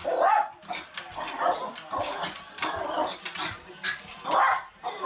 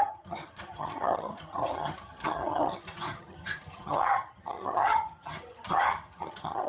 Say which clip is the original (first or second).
first